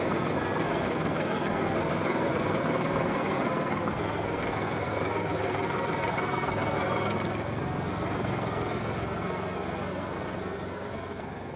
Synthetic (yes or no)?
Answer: yes